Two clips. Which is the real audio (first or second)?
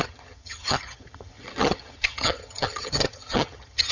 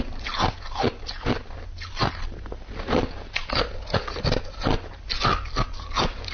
second